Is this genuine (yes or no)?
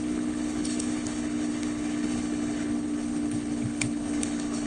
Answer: no